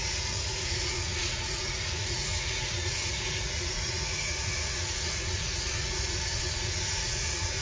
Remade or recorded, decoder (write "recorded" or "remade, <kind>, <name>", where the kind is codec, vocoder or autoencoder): remade, vocoder, Vocos